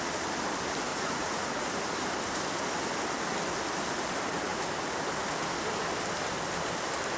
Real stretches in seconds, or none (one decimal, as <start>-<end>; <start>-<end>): 0.0-0.9; 1.7-7.2